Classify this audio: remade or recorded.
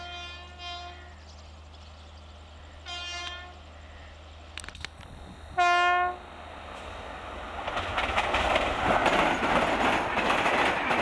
recorded